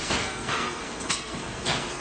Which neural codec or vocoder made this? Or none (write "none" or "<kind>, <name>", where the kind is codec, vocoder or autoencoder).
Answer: codec, SNAC